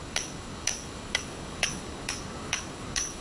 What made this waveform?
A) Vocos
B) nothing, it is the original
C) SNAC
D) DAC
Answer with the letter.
D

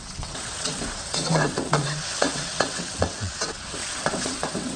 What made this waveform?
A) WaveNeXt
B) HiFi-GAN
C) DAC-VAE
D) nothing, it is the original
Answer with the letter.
A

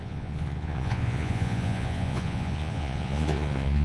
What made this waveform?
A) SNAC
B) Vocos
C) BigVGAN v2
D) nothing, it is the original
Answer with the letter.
B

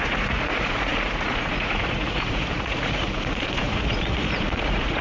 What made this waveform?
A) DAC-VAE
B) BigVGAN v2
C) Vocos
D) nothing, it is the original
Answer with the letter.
C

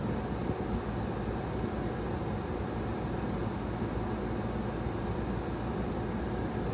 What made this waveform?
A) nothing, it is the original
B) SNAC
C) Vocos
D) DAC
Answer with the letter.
A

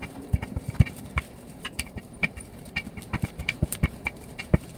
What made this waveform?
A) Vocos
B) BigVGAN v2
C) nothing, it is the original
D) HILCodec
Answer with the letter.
B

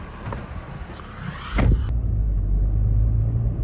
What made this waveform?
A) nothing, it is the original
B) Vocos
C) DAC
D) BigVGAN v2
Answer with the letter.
A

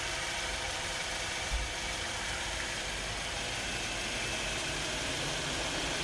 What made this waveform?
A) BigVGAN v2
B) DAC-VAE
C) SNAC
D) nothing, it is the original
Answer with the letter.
A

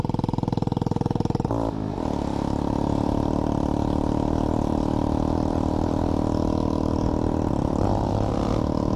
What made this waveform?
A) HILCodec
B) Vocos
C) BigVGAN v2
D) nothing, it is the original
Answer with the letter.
D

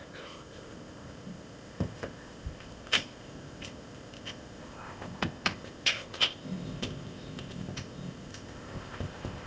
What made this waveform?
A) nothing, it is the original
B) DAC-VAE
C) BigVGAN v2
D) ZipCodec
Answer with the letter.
D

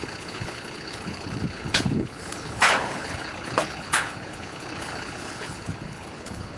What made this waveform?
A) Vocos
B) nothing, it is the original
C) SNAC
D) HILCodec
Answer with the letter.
D